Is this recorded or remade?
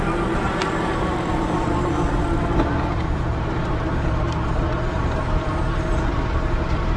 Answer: remade